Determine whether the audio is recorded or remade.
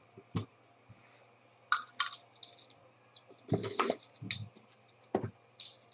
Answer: recorded